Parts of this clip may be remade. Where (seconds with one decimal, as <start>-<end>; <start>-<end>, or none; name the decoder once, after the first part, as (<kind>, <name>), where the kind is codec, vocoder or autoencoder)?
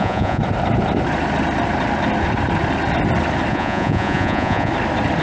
0.0-0.4 (vocoder, Vocos); 3.5-4.7